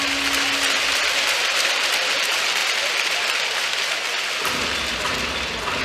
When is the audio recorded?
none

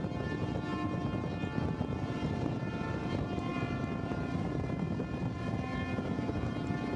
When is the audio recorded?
0.0-7.0

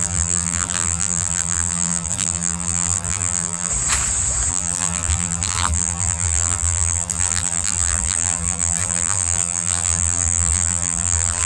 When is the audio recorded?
3.7-4.5